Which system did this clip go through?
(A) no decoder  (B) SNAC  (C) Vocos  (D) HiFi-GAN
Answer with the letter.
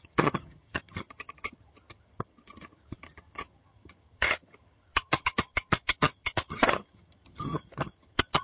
D